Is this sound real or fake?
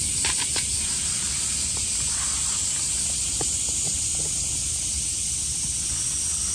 real